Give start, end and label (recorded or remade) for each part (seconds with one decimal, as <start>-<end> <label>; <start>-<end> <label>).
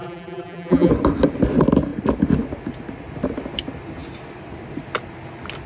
0.0-0.9 remade; 0.9-5.7 recorded